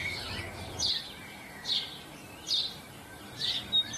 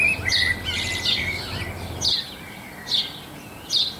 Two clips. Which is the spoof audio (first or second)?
first